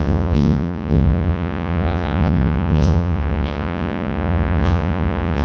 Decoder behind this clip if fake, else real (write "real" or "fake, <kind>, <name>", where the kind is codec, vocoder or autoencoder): fake, vocoder, Vocos